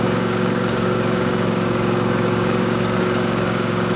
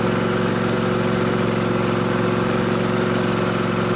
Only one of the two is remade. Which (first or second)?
first